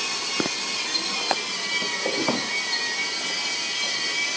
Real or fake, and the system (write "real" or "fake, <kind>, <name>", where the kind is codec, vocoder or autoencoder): real